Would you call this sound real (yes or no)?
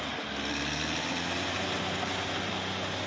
yes